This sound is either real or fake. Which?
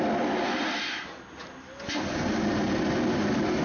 real